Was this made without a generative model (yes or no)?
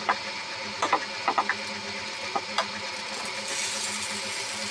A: yes